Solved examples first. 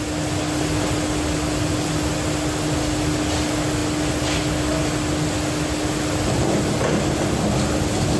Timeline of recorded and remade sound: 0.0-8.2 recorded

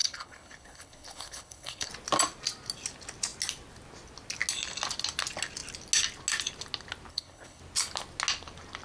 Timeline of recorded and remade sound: 0.0-1.9 remade; 1.9-7.1 recorded; 7.1-7.6 remade; 7.6-8.8 recorded

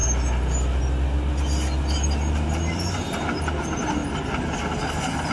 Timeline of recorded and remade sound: 0.0-5.3 recorded

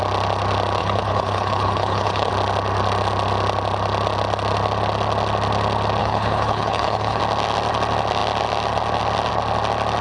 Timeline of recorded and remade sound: 0.0-0.8 recorded; 0.8-2.3 remade; 2.3-6.0 recorded; 6.0-7.2 remade; 7.2-10.0 recorded

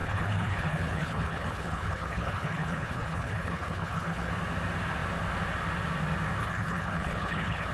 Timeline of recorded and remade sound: 0.0-4.3 remade; 4.3-6.4 recorded; 6.4-7.7 remade

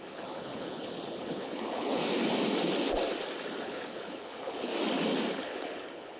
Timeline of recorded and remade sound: 0.0-2.0 remade; 2.0-3.6 recorded; 3.6-4.7 remade; 4.7-5.3 recorded; 5.3-6.2 remade

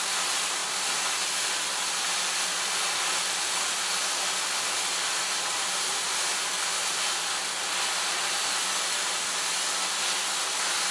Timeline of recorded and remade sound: 0.0-10.9 recorded